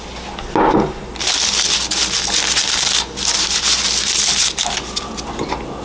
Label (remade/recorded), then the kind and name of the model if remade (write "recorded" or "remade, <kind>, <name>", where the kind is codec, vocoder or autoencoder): recorded